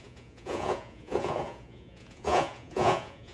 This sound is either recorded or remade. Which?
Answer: remade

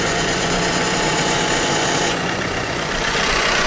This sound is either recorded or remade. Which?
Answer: remade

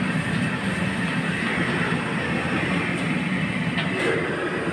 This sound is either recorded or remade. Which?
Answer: recorded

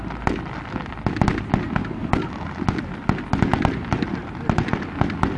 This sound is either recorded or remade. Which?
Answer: recorded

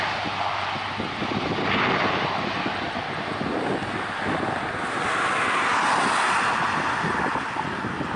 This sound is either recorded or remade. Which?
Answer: recorded